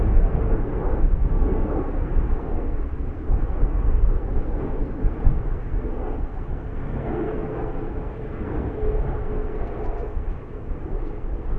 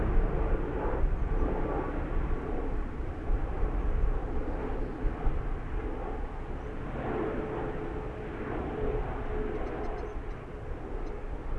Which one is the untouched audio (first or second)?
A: second